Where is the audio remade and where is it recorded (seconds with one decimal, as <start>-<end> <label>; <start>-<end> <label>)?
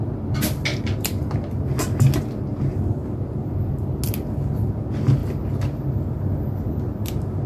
0.0-0.7 recorded; 0.7-1.3 remade; 1.3-7.5 recorded